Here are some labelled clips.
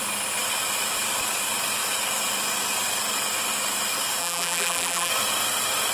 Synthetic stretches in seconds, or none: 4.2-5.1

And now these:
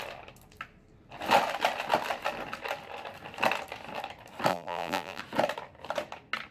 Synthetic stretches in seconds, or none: 4.5-5.2